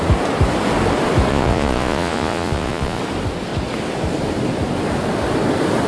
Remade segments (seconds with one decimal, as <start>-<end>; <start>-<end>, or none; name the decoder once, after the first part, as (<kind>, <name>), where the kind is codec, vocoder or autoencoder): 1.3-3.0 (vocoder, Vocos)